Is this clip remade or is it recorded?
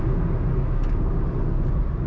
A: recorded